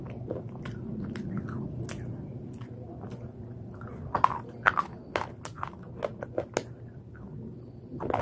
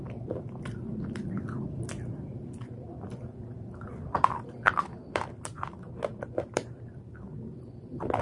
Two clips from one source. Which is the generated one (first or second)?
second